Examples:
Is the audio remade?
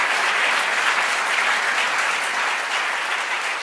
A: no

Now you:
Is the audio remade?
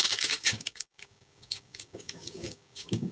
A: yes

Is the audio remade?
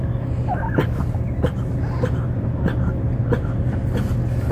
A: no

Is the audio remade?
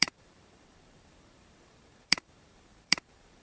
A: yes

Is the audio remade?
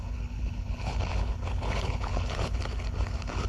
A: yes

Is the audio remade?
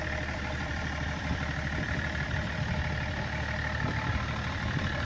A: yes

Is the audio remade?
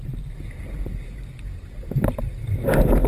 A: no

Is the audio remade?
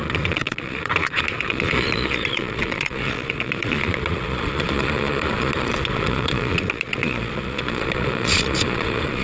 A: yes